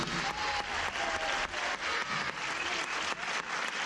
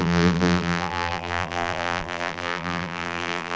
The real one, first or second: first